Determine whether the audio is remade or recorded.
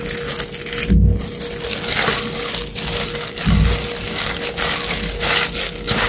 recorded